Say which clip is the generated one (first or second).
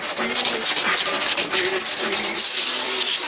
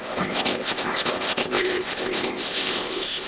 second